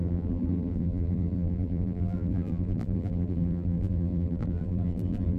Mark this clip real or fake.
fake